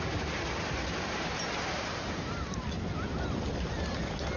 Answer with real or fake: real